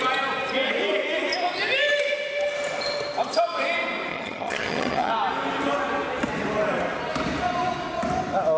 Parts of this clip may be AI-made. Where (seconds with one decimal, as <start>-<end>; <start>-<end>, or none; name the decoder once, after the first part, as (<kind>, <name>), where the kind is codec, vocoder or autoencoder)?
4.1-5.1 (vocoder, HiFi-GAN)